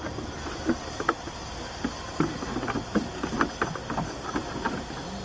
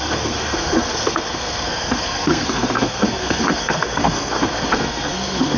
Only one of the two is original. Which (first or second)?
first